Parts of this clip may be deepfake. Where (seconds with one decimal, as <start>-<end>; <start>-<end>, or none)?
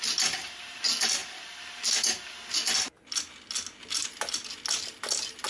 none